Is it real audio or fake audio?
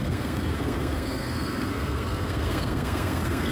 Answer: fake